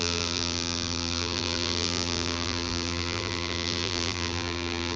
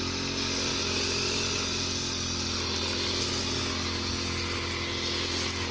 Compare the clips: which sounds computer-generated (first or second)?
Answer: first